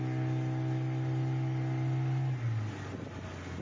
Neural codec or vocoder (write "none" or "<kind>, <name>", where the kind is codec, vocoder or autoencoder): none